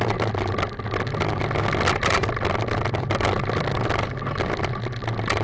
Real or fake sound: real